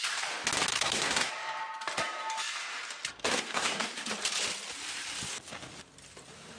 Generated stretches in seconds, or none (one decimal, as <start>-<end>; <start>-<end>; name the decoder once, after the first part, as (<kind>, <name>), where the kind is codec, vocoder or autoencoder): 0.7-1.3 (codec, SNAC); 3.2-4.1